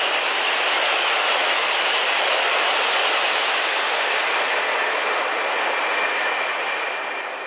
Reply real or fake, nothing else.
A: real